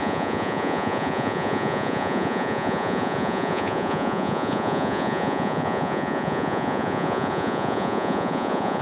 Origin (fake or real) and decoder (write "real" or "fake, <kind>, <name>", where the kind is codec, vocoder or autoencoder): fake, vocoder, Vocos